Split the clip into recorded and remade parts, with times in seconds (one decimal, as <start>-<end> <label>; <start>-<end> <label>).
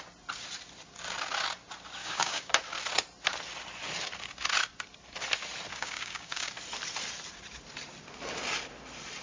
0.0-2.0 recorded; 2.0-2.5 remade; 2.5-5.7 recorded; 5.7-6.5 remade; 6.5-9.2 recorded